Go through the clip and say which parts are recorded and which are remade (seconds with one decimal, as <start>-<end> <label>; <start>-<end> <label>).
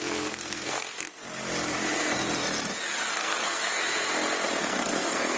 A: 0.0-1.4 remade; 1.4-3.1 recorded; 3.1-3.8 remade; 3.8-4.6 recorded; 4.6-5.4 remade